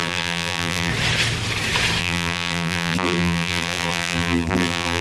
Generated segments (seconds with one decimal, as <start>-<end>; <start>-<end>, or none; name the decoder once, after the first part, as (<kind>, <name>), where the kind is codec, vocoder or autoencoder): 0.0-0.9 (vocoder, BigVGAN v2); 2.0-5.0